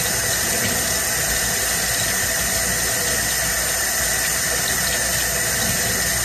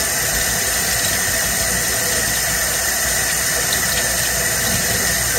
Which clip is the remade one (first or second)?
second